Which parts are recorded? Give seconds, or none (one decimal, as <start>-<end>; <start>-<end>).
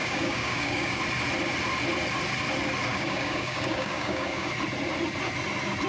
1.0-2.9; 4.5-5.9